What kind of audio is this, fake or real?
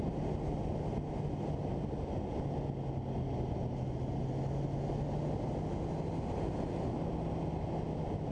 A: real